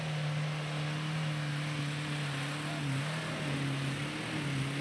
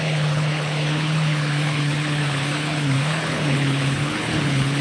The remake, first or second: second